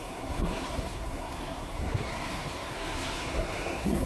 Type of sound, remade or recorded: remade